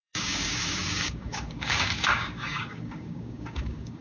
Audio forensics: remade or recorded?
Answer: remade